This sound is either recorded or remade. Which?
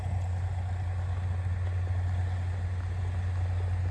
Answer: recorded